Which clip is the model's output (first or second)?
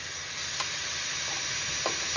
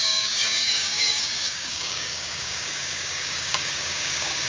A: second